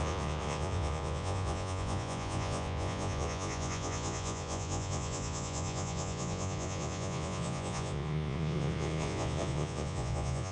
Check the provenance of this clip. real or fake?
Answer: fake